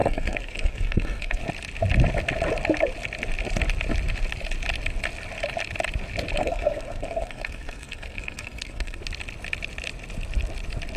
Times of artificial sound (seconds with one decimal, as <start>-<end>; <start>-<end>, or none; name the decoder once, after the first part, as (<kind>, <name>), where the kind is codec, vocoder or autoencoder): 0.0-1.4 (codec, SNAC); 6.4-9.0